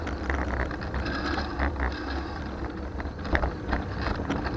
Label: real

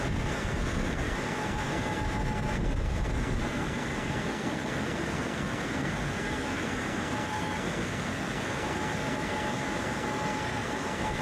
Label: fake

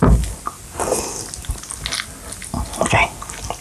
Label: real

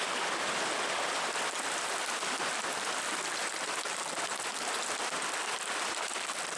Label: real